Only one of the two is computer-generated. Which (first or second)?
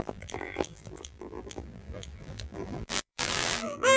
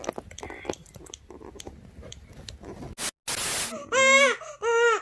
first